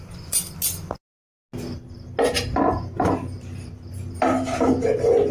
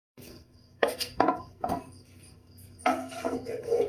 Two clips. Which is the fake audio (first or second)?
second